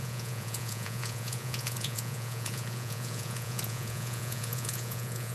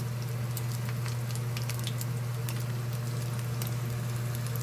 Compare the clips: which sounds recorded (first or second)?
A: second